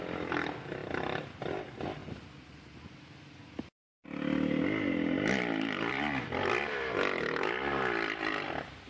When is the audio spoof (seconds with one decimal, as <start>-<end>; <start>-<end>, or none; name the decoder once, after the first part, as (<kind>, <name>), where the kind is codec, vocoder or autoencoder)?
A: none